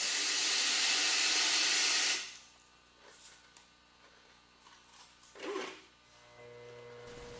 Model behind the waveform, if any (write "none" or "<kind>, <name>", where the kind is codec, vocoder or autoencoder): none